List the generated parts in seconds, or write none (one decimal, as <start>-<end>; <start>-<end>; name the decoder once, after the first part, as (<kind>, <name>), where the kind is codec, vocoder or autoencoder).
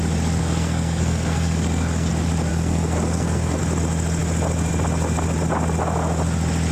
0.4-2.1 (codec, SNAC); 2.5-3.6